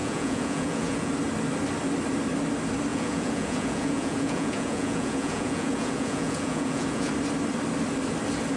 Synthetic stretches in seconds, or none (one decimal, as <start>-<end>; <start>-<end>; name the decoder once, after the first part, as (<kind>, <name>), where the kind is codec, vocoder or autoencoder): 0.0-1.1 (vocoder, Vocos); 2.9-7.1